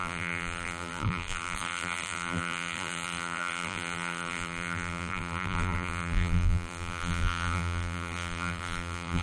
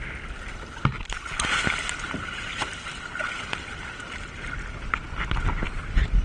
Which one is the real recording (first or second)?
second